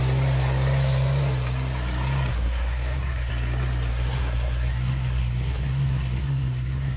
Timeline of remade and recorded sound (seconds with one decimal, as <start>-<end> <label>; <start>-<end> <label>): 0.0-2.3 recorded; 2.3-3.3 remade; 3.3-3.9 recorded; 3.9-7.0 remade